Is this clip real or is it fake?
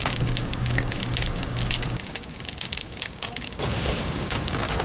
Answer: fake